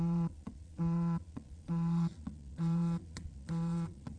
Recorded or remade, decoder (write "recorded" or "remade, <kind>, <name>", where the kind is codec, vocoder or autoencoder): remade, vocoder, Vocos